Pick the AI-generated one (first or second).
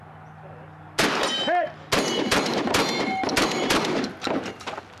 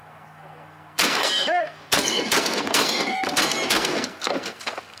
second